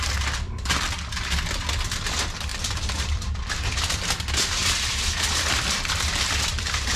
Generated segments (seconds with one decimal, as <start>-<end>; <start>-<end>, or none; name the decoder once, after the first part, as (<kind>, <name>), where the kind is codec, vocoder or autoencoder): 2.5-3.5 (vocoder, BigVGAN v2); 4.6-7.0